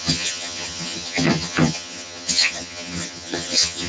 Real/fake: fake